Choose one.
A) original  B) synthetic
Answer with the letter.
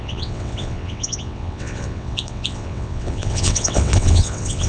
B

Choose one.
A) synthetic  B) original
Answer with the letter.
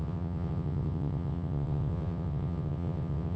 A